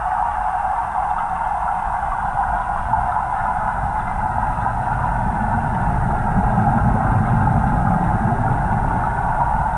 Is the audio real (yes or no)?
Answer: yes